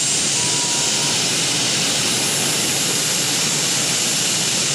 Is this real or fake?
real